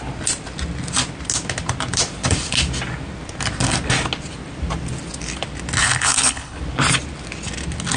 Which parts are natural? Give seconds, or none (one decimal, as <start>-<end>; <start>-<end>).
0.0-5.8; 6.6-8.0